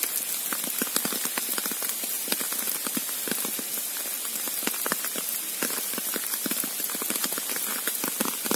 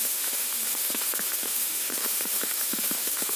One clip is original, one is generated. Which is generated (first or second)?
second